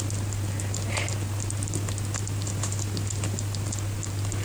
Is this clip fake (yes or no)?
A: no